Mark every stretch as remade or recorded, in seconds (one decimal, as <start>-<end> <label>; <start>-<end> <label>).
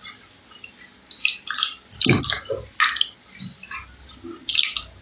0.0-5.0 recorded